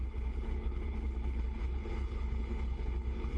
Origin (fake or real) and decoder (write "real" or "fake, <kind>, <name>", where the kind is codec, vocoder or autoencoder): fake, codec, HILCodec